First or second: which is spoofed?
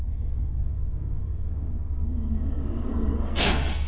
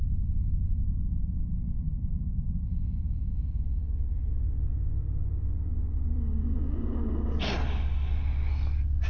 first